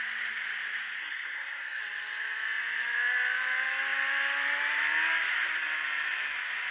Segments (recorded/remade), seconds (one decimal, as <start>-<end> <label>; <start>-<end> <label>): 0.0-1.0 recorded; 1.0-1.8 remade; 1.8-6.7 recorded